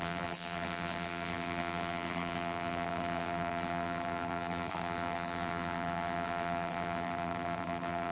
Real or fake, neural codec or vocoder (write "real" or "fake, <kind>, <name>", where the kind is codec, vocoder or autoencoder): fake, vocoder, BigVGAN v2